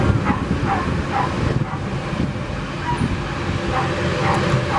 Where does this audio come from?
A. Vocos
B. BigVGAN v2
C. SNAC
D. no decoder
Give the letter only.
D